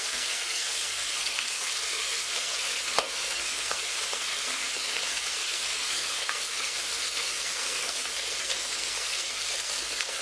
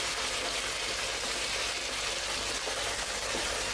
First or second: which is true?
second